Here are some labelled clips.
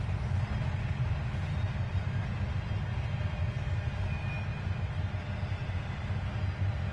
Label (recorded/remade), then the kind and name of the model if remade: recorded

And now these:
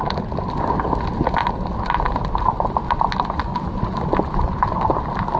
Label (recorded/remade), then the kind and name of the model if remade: recorded